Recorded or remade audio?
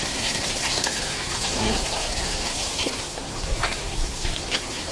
remade